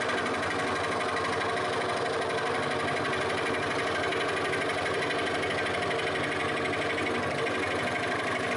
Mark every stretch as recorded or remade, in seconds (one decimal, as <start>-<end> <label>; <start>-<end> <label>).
0.0-8.6 recorded